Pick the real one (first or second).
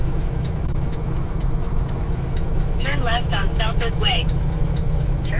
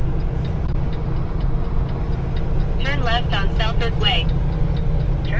second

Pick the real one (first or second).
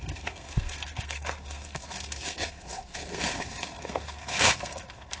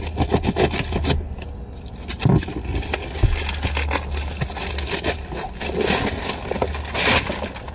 second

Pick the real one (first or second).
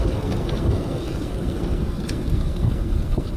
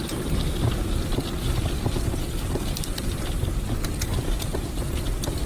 second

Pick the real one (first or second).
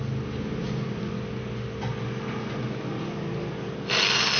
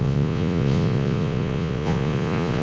first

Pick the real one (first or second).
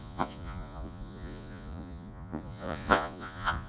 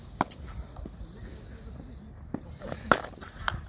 second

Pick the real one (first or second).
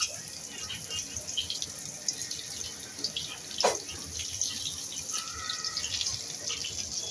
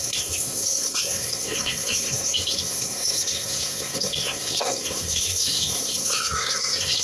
first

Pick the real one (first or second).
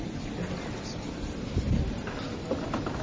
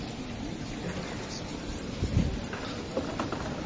first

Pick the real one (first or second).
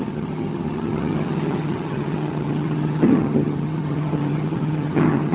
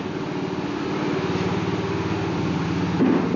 second